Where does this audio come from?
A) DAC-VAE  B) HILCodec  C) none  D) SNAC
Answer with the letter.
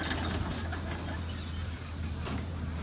C